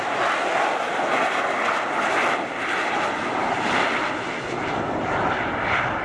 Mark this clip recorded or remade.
recorded